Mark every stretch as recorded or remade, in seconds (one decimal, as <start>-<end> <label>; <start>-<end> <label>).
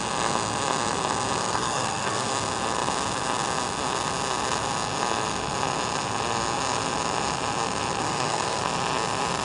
0.0-1.4 recorded; 1.4-2.3 remade; 2.3-8.0 recorded; 8.0-8.6 remade; 8.6-9.4 recorded